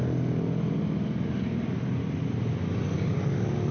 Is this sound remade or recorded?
recorded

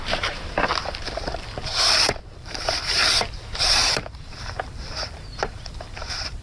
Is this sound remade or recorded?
remade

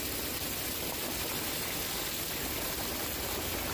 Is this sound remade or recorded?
recorded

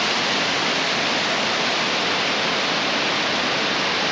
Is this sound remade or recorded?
recorded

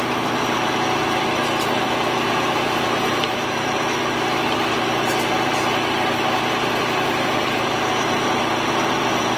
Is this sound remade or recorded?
remade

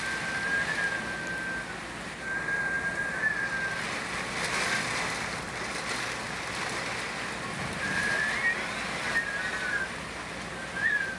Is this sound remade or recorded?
recorded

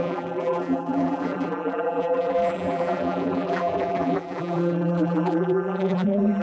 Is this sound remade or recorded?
remade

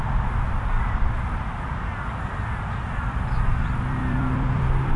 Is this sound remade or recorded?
remade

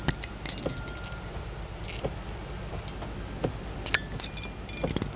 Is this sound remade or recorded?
recorded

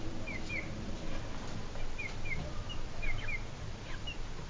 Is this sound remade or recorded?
recorded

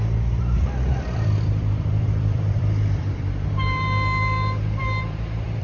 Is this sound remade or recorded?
remade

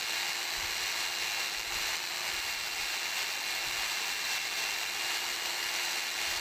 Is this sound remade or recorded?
recorded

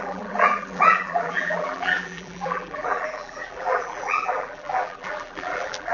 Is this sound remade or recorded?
remade